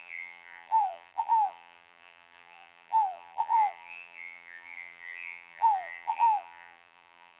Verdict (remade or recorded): remade